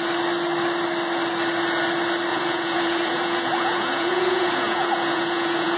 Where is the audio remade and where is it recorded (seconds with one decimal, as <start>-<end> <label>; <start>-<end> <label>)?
0.0-2.3 recorded; 2.3-5.8 remade